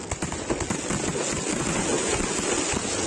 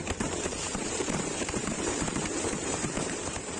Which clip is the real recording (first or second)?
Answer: first